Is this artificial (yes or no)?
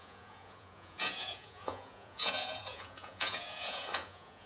yes